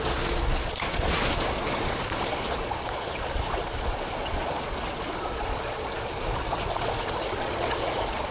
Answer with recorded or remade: remade